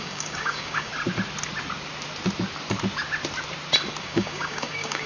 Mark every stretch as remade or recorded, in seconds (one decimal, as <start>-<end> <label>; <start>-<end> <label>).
0.0-0.9 remade; 0.9-4.0 recorded; 4.0-5.1 remade

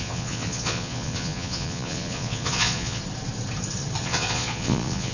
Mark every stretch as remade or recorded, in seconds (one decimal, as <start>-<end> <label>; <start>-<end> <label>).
0.0-3.0 remade; 3.0-4.0 recorded; 4.0-5.1 remade

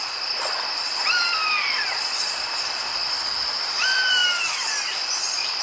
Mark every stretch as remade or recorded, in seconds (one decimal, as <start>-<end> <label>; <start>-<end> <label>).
0.0-3.0 remade; 3.0-3.6 recorded; 3.6-5.6 remade

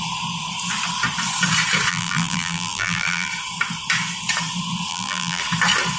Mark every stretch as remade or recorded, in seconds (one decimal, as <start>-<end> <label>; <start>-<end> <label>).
0.0-1.9 recorded; 1.9-3.3 remade; 3.3-4.9 recorded; 4.9-5.4 remade; 5.4-6.0 recorded

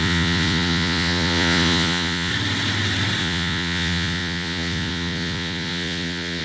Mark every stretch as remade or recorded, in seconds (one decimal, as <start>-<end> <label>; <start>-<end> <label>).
0.0-2.3 remade; 2.3-3.2 recorded; 3.2-6.4 remade

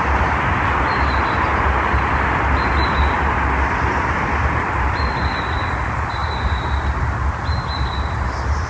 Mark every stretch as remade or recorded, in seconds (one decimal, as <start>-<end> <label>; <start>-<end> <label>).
0.0-8.7 recorded